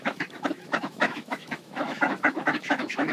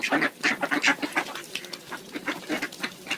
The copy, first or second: first